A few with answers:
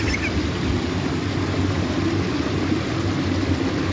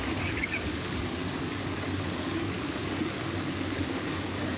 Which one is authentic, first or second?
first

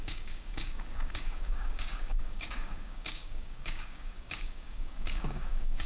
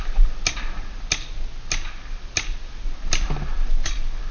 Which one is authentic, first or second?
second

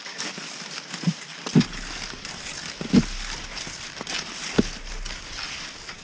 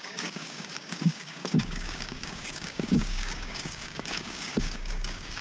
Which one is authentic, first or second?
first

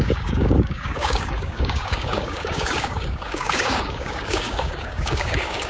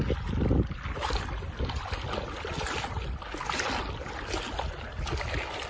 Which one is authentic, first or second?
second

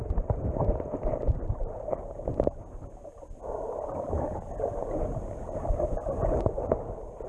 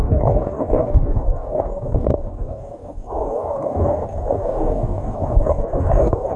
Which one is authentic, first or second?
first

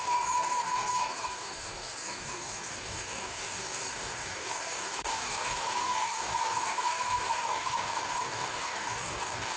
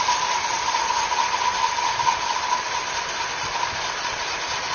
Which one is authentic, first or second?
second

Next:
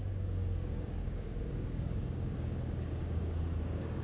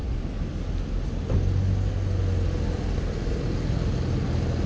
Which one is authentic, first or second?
second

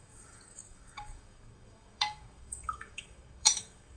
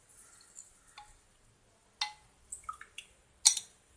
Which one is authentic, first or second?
second